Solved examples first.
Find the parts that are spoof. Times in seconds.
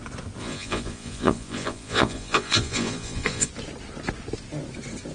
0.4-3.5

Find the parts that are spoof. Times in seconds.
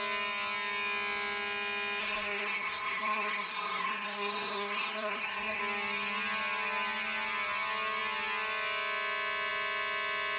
2.0-5.6